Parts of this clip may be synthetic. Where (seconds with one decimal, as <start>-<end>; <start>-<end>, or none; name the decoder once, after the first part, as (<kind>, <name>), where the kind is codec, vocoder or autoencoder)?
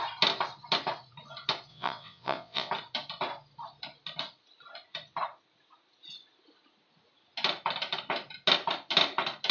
1.7-2.7 (vocoder, WaveNeXt)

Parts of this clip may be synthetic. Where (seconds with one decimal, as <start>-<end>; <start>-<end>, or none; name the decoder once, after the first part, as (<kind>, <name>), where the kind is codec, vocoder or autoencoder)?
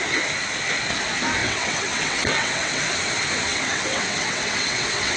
1.4-2.8 (vocoder, WaveNeXt); 3.5-5.2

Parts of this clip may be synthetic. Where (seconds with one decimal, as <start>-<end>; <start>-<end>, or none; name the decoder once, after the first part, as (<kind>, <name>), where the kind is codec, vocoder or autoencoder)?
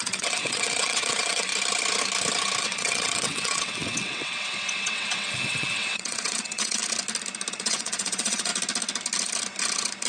0.0-1.5 (vocoder, WaveNeXt); 2.6-6.8; 7.5-8.5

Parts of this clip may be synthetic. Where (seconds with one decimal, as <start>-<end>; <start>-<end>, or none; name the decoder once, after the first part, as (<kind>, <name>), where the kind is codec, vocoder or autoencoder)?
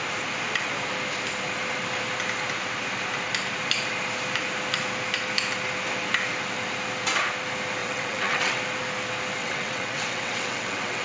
7.8-8.6 (vocoder, WaveNeXt); 9.4-11.0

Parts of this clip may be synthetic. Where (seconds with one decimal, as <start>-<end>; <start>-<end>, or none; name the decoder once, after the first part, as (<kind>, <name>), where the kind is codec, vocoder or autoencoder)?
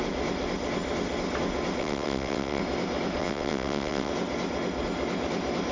1.8-2.6 (vocoder, WaveNeXt); 3.2-4.1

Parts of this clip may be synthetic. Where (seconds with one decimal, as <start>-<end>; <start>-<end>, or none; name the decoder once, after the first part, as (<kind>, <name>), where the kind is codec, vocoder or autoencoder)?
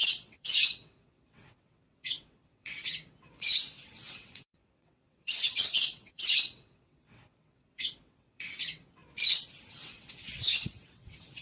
0.0-9.0 (vocoder, WaveNeXt); 9.7-11.4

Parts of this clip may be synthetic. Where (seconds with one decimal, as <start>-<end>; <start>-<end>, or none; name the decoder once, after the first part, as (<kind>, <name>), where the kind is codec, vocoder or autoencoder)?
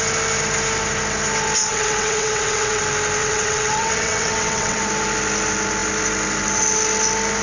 1.7-2.8 (vocoder, WaveNeXt); 3.2-4.8